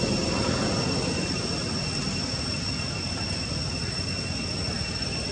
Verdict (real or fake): real